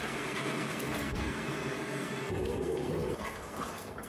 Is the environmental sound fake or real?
fake